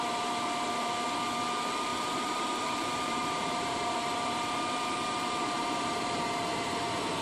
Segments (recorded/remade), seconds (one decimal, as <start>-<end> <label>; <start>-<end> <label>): 0.0-1.9 recorded; 1.9-6.2 remade; 6.2-7.2 recorded